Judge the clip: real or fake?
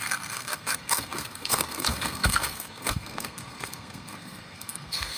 fake